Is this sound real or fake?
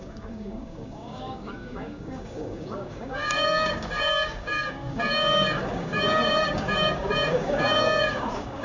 fake